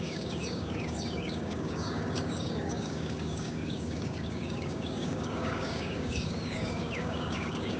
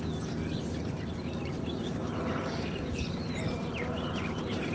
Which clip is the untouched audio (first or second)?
second